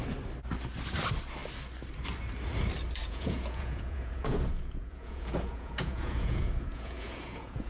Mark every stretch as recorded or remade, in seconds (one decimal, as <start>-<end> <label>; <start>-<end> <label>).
0.0-3.0 recorded; 3.0-7.7 remade